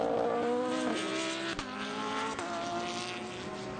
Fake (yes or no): no